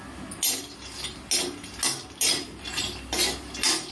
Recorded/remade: recorded